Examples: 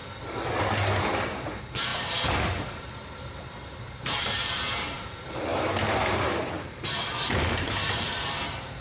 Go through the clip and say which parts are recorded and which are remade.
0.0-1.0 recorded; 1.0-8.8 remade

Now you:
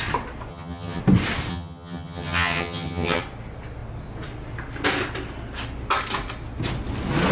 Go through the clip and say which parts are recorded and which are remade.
0.0-0.5 recorded; 0.5-1.0 remade; 1.0-1.5 recorded; 1.5-3.2 remade; 3.2-7.3 recorded

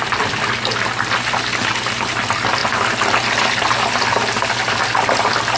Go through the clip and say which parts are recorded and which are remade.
0.0-5.6 recorded

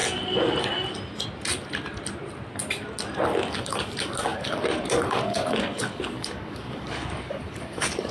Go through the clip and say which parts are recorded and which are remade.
0.0-3.5 recorded; 3.5-8.1 remade